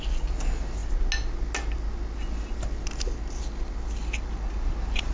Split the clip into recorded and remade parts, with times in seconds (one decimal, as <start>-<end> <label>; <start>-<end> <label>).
0.0-4.0 recorded; 4.0-5.1 remade